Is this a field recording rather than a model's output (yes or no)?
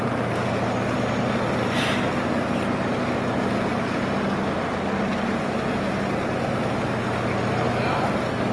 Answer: yes